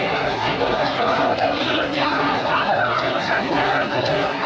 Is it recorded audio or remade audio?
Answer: remade